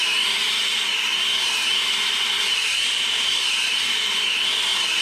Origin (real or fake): real